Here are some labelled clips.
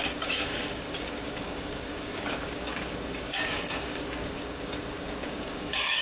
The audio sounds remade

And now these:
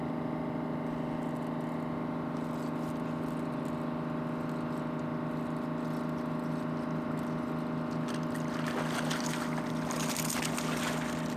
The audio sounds recorded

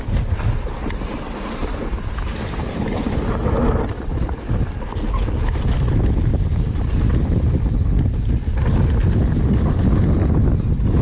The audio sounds recorded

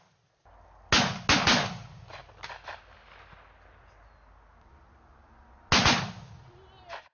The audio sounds recorded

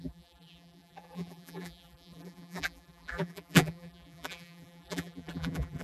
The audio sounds remade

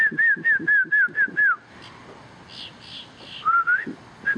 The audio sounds recorded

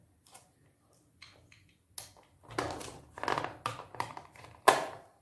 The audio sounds recorded